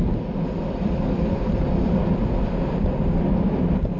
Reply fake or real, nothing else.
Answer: real